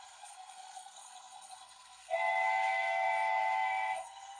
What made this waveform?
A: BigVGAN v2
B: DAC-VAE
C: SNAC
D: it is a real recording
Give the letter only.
C